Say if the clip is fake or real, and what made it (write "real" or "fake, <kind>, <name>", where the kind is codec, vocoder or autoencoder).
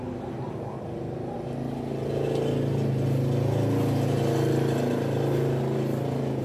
real